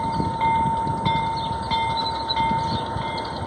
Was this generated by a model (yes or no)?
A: no